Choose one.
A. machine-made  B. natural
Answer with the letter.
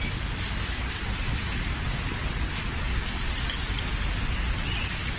B